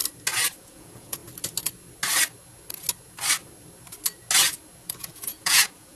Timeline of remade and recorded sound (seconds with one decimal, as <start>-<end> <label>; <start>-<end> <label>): 0.0-0.6 recorded; 0.6-1.2 remade; 1.2-4.8 recorded; 4.8-6.0 remade

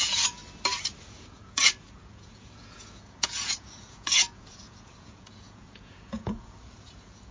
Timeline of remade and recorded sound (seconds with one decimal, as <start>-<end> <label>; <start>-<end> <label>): 0.0-0.4 remade; 0.4-1.0 recorded; 1.0-7.3 remade

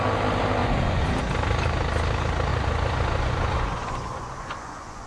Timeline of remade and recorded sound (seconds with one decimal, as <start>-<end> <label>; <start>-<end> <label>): 0.0-0.6 recorded; 0.6-1.1 remade; 1.1-2.5 recorded; 2.5-5.1 remade

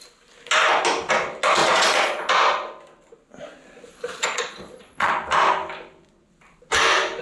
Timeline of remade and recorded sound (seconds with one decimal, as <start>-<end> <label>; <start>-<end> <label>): 0.0-1.6 recorded; 1.6-2.3 remade; 2.3-3.9 recorded; 3.9-5.1 remade; 5.1-7.2 recorded

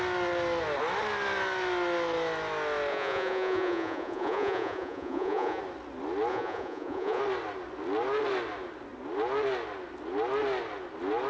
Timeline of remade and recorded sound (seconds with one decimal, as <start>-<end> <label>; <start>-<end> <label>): 0.0-2.9 recorded; 2.9-5.6 remade; 5.6-6.3 recorded; 6.3-7.2 remade; 7.2-11.3 recorded